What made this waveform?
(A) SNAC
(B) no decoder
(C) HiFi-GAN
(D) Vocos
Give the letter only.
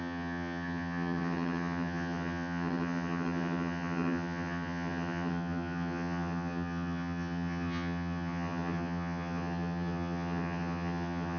C